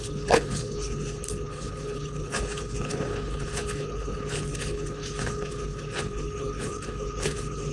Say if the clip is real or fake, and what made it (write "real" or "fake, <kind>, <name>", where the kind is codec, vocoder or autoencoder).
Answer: fake, codec, HILCodec